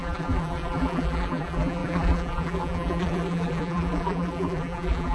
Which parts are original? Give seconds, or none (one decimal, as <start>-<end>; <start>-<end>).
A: none